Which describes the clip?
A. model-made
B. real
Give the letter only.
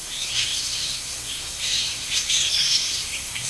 A